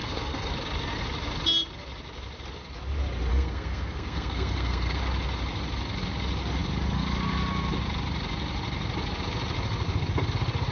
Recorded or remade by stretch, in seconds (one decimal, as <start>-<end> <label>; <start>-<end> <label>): 0.0-0.5 remade; 0.5-3.3 recorded; 3.3-5.0 remade; 5.0-10.7 recorded